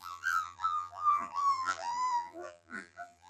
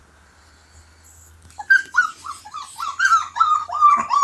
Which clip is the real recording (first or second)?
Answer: second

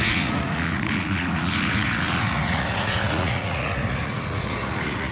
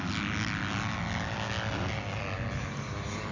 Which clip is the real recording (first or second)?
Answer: second